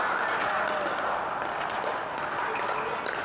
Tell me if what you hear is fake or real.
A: real